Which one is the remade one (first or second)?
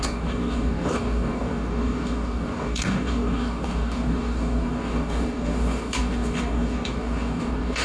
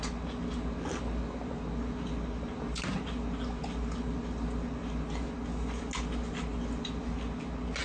first